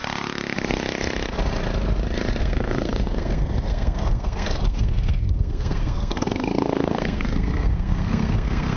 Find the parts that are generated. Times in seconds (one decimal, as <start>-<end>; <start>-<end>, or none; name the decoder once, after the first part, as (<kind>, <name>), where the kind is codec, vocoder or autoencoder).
2.4-8.8 (codec, SNAC)